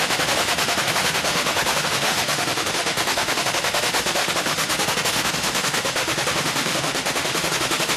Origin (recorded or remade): remade